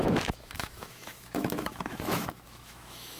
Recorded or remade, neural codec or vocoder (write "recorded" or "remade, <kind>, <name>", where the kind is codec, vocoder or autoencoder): remade, autoencoder, DAC-VAE